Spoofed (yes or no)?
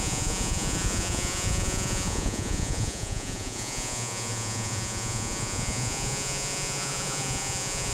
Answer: yes